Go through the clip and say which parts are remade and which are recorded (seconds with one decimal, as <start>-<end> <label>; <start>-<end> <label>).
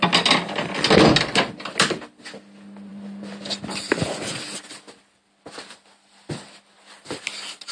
0.0-2.9 recorded; 2.9-4.1 remade; 4.1-7.7 recorded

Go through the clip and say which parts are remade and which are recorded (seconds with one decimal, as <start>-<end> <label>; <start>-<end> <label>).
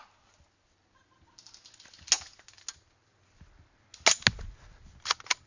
0.0-5.5 recorded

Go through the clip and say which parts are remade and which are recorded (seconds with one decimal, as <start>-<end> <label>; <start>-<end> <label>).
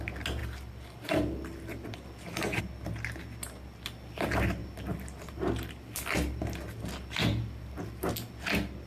0.0-0.4 recorded; 0.4-2.6 remade; 2.6-4.6 recorded; 4.6-8.1 remade; 8.1-8.9 recorded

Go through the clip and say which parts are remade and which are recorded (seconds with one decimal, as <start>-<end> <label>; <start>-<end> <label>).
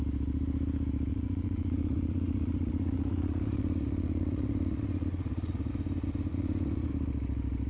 0.0-1.1 recorded; 1.1-5.7 remade; 5.7-6.3 recorded; 6.3-6.9 remade; 6.9-7.7 recorded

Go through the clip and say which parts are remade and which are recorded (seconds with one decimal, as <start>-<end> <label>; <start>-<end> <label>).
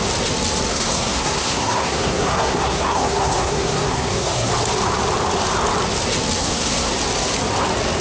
0.0-0.7 recorded; 0.7-4.5 remade; 4.5-6.4 recorded; 6.4-6.9 remade; 6.9-8.0 recorded